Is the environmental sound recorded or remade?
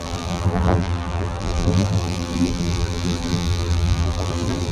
remade